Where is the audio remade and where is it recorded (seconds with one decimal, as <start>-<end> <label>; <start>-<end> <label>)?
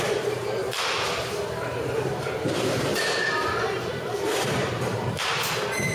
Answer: 0.0-0.6 remade; 0.6-1.9 recorded; 1.9-5.9 remade